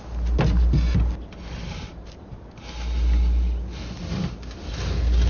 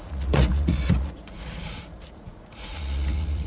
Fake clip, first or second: second